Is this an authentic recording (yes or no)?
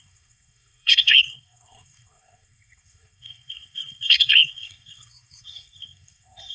no